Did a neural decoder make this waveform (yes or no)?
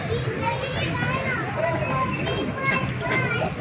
no